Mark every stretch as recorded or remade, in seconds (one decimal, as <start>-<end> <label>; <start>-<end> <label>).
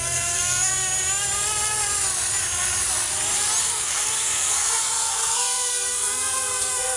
0.0-0.7 remade; 0.7-3.6 recorded; 3.6-7.0 remade